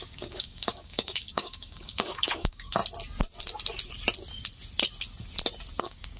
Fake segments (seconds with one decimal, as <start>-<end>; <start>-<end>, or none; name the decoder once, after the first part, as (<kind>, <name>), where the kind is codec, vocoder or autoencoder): 0.0-2.8 (codec, DAC); 5.8-6.2